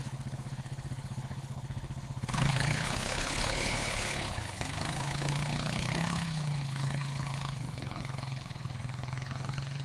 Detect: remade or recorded remade